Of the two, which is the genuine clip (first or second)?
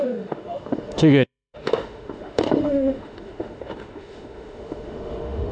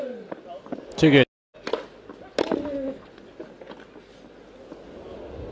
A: second